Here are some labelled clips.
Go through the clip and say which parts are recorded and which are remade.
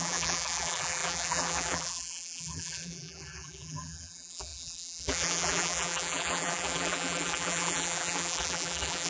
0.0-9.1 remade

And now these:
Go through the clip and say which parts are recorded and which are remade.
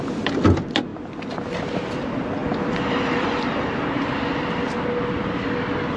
0.0-2.4 recorded; 2.4-4.1 remade; 4.1-6.0 recorded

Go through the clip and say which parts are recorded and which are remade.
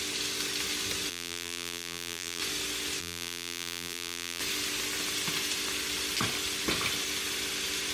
0.0-1.1 recorded; 1.1-2.4 remade; 2.4-3.0 recorded; 3.0-4.4 remade; 4.4-7.9 recorded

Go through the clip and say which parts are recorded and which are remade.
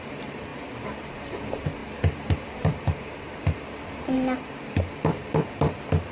0.0-0.5 remade; 0.5-1.0 recorded; 1.0-6.1 remade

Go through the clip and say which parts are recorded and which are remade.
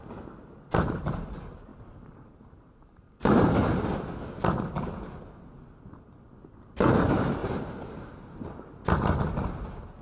0.0-1.7 recorded; 1.7-3.8 remade; 3.8-7.4 recorded; 7.4-8.5 remade; 8.5-10.0 recorded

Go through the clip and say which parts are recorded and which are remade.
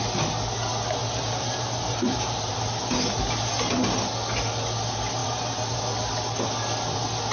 0.0-1.0 recorded; 1.0-2.5 remade; 2.5-5.2 recorded; 5.2-5.8 remade; 5.8-7.3 recorded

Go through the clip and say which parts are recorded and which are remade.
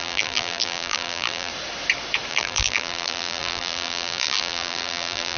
0.0-1.5 remade; 1.5-2.3 recorded; 2.3-5.4 remade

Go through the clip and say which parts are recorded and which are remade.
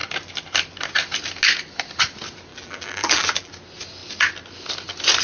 0.0-2.5 recorded; 2.5-3.5 remade; 3.5-5.2 recorded